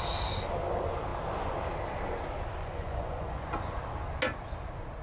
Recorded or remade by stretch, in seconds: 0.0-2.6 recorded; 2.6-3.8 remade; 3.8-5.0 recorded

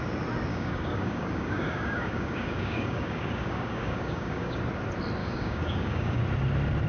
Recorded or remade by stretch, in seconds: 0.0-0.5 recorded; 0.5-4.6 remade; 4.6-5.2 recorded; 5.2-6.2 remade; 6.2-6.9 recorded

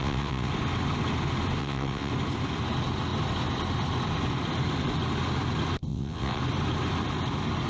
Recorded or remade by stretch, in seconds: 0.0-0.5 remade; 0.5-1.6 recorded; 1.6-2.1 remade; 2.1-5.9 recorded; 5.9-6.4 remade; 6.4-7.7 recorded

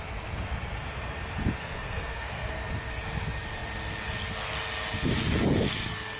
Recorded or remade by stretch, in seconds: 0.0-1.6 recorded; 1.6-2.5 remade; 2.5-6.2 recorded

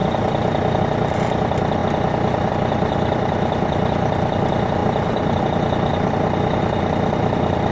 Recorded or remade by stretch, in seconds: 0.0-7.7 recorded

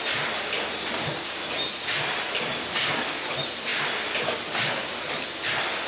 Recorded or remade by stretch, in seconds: 0.0-5.9 recorded

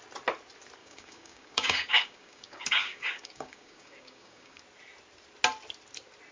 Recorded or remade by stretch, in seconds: 0.0-0.8 recorded; 0.8-4.6 remade; 4.6-6.3 recorded